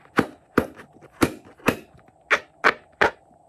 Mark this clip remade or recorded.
recorded